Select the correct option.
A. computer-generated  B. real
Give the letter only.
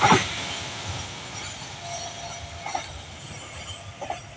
B